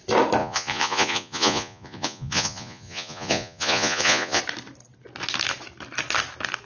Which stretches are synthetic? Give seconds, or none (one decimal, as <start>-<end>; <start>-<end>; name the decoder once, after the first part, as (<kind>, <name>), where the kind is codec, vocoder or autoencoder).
0.4-4.4 (vocoder, Vocos)